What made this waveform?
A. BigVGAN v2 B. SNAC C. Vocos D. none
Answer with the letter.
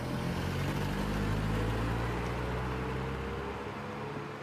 D